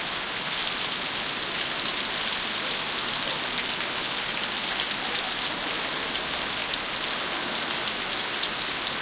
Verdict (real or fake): real